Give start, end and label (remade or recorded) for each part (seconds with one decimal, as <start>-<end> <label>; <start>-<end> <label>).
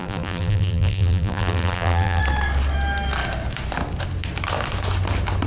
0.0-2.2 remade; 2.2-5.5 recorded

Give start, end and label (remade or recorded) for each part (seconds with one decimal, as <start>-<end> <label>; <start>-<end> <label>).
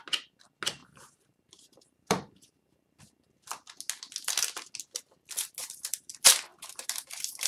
0.0-0.8 recorded; 0.8-3.0 remade; 3.0-5.6 recorded; 5.6-6.1 remade; 6.1-6.5 recorded; 6.5-7.1 remade; 7.1-7.5 recorded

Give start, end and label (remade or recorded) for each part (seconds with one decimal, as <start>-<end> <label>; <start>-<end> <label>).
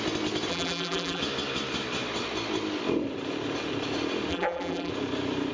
0.0-0.5 recorded; 0.5-1.2 remade; 1.2-4.3 recorded; 4.3-4.9 remade; 4.9-5.5 recorded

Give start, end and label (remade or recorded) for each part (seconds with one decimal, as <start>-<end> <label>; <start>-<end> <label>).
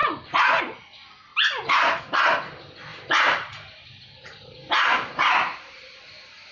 0.0-1.3 recorded; 1.3-2.0 remade; 2.0-2.9 recorded; 2.9-5.9 remade; 5.9-6.5 recorded